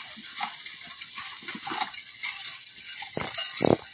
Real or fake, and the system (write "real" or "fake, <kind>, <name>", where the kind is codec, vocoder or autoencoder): real